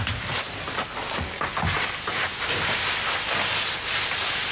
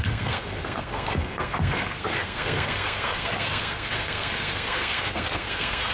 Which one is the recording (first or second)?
first